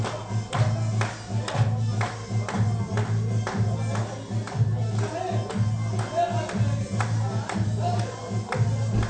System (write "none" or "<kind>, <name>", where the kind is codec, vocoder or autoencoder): none